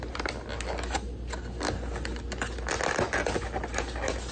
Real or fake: real